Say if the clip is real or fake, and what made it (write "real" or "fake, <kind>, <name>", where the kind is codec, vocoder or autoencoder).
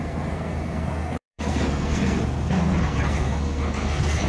fake, codec, SNAC